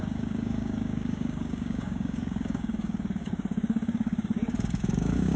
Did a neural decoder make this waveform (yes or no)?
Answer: yes